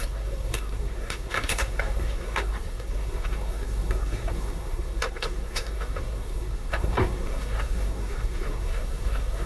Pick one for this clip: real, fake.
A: fake